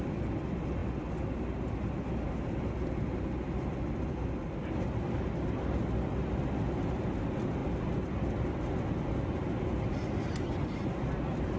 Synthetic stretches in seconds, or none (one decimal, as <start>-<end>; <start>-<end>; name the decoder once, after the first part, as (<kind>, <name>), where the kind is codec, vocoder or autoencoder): none